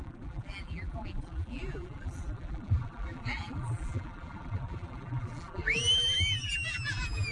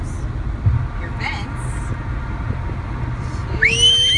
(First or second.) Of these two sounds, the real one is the second